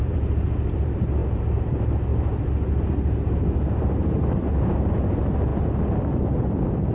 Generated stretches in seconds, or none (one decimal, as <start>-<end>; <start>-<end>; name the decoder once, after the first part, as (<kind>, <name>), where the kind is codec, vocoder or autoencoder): 0.0-1.2 (vocoder, BigVGAN v2); 1.7-2.1; 4.9-5.5; 6.2-6.9